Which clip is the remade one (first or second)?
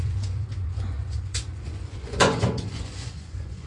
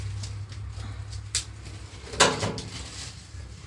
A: first